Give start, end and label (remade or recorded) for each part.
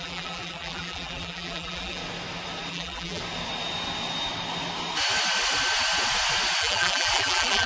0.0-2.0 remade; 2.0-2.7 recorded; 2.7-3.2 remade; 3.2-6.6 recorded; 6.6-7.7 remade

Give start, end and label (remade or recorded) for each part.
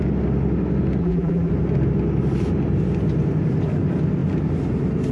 0.0-1.0 recorded; 1.0-1.5 remade; 1.5-5.1 recorded